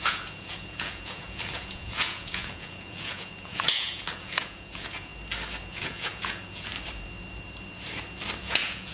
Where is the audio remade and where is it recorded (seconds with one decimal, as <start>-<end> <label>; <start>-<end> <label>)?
0.0-5.1 remade; 5.1-5.6 recorded; 5.6-6.7 remade; 6.7-8.4 recorded; 8.4-8.9 remade